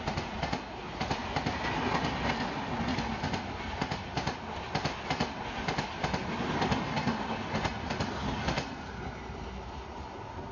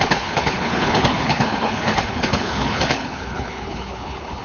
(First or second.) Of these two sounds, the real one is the first